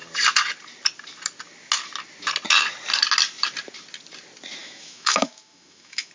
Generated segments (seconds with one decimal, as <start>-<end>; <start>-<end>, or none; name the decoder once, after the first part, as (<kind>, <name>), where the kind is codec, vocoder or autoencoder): 4.6-6.1 (autoencoder, DAC-VAE)